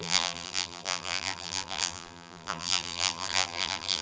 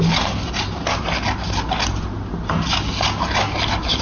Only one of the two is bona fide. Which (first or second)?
second